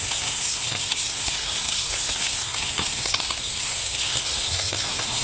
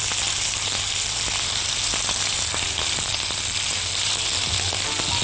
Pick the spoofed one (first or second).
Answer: first